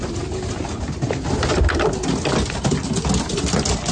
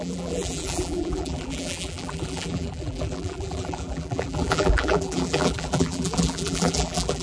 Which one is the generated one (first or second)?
second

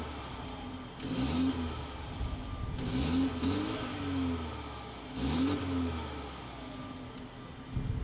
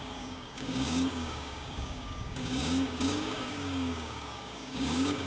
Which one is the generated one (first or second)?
second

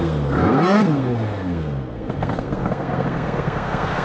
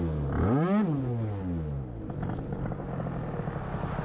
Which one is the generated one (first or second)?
first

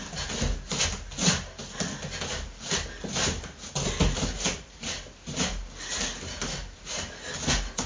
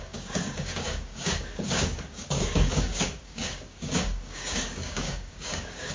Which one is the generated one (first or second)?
second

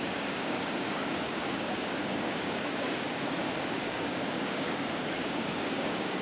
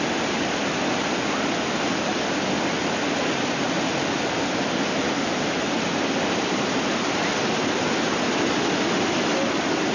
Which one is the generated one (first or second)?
first